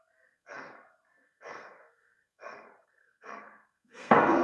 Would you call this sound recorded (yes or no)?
no